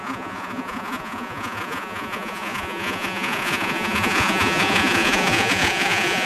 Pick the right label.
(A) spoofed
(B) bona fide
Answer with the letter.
A